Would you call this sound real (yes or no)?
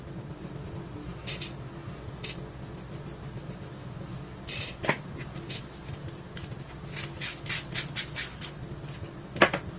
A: yes